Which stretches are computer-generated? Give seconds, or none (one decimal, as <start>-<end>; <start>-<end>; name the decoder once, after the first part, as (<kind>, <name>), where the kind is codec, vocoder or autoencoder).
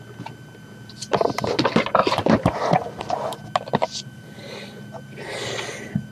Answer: 2.0-3.0 (vocoder, BigVGAN v2); 3.8-4.8